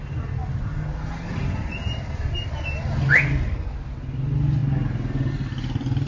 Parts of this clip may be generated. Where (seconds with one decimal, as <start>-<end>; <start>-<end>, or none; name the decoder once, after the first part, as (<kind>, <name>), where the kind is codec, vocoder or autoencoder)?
none